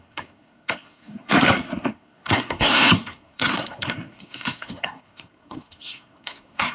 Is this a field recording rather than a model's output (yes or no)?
no